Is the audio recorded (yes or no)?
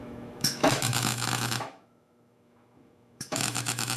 no